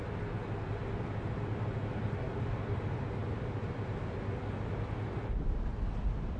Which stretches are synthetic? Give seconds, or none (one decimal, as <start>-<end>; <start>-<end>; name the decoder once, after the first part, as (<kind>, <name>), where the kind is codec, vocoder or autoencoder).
none